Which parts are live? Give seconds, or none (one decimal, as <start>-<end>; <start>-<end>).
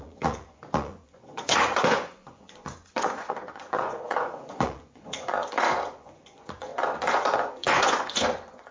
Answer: none